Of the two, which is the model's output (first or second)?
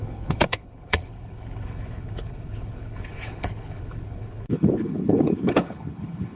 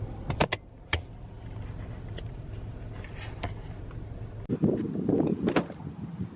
first